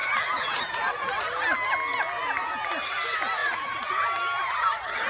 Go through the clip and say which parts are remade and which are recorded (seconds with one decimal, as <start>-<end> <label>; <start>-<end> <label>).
0.0-3.4 recorded; 3.4-4.0 remade; 4.0-5.1 recorded